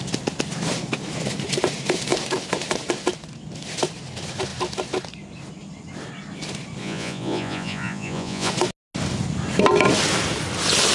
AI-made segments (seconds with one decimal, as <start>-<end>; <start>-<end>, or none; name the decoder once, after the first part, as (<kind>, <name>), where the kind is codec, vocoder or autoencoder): 6.8-8.5 (vocoder, Vocos)